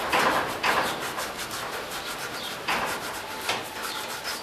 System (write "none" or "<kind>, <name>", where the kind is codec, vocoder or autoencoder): none